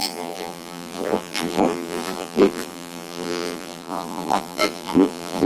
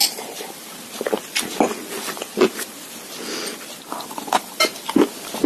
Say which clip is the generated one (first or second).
first